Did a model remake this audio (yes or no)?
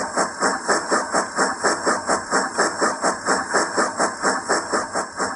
no